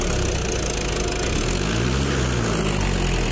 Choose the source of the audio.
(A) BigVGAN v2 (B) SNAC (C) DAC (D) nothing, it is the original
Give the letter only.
D